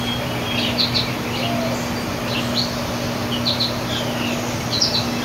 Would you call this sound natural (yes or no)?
yes